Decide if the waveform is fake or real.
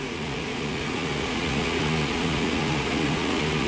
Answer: fake